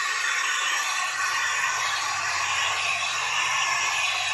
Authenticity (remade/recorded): remade